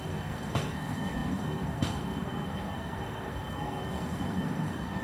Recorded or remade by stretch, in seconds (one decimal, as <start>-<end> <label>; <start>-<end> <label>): 0.0-5.0 remade